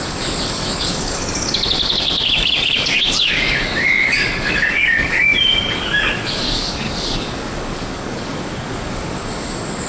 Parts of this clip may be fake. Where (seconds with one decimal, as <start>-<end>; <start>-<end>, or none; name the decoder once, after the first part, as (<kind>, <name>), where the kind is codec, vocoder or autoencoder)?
0.0-9.9 (codec, DAC)